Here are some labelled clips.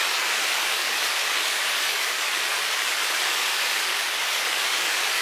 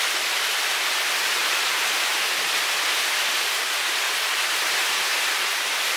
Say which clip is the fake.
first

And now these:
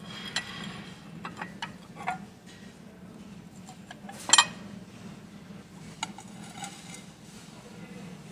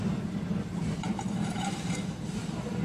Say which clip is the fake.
second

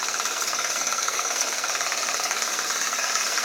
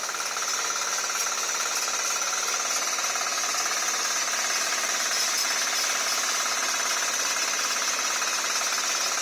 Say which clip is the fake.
first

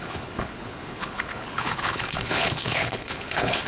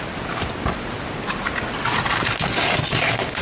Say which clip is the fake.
first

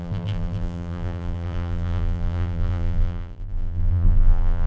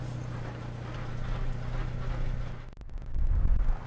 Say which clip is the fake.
first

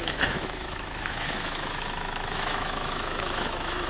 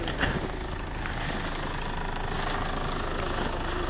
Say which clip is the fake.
first